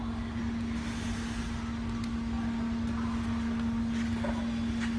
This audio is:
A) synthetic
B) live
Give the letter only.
B